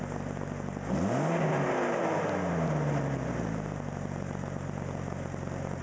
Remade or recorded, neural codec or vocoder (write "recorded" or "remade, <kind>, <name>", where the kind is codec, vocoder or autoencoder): recorded